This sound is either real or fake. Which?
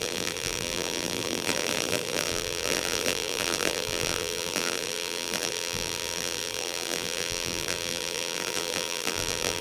fake